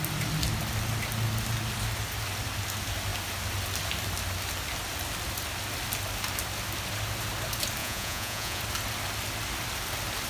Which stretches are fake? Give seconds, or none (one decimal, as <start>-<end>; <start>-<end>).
7.8-8.6